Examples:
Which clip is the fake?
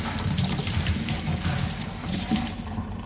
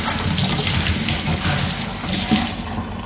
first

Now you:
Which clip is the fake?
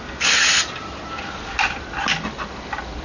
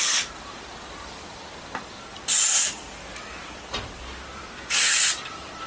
second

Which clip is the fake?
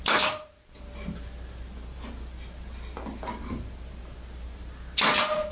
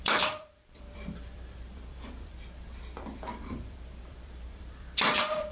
second